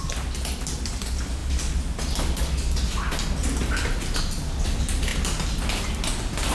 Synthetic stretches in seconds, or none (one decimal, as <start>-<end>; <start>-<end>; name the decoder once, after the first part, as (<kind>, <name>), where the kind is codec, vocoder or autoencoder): none